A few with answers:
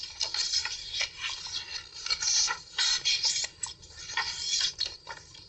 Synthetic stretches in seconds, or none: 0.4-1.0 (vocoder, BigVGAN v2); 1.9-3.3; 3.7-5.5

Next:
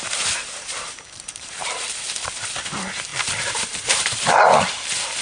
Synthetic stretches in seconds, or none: 0.4-2.0 (vocoder, BigVGAN v2); 3.1-4.7

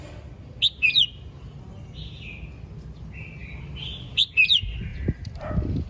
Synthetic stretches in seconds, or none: 3.4-4.3 (vocoder, BigVGAN v2); 4.9-5.9

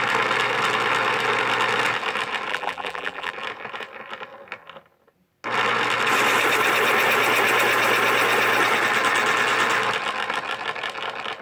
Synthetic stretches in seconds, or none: 2.5-3.3 (vocoder, BigVGAN v2)

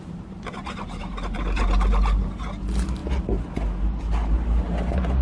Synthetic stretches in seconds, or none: 0.0-3.0 (vocoder, BigVGAN v2); 4.0-5.2

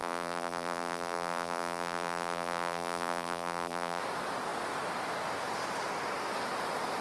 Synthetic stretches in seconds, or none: 0.0-4.0 (vocoder, BigVGAN v2)

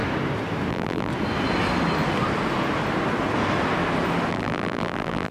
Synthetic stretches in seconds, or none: 0.7-1.1 (vocoder, BigVGAN v2); 4.3-5.3

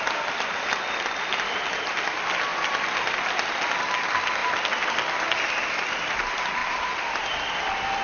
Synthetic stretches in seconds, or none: 6.6-7.3 (vocoder, BigVGAN v2)